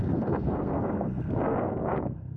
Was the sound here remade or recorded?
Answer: remade